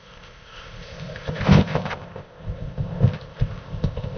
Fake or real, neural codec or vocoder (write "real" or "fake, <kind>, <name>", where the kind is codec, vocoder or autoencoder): fake, codec, ZipCodec